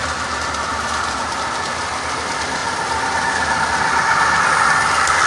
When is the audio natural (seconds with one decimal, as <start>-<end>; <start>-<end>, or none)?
0.0-0.7; 1.9-2.6; 3.6-5.3